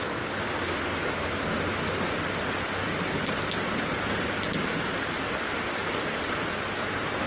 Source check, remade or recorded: recorded